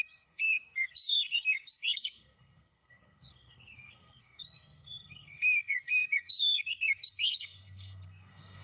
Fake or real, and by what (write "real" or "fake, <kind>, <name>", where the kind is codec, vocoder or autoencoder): fake, codec, SNAC